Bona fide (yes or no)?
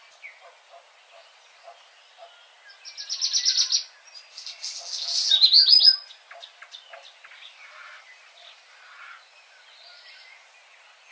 yes